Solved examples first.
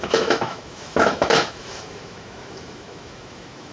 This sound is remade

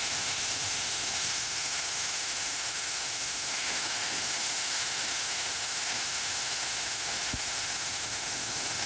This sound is remade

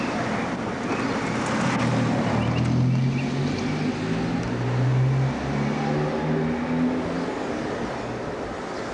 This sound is recorded